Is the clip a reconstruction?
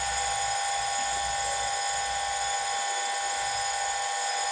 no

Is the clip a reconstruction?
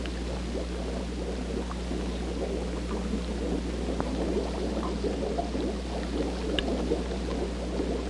no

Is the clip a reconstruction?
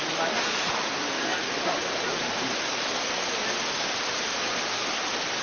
no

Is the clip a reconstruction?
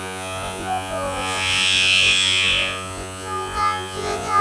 yes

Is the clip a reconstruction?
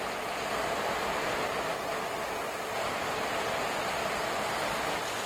no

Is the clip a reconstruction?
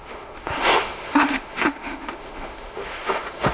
yes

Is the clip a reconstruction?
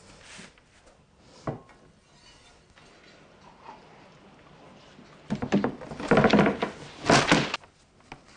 no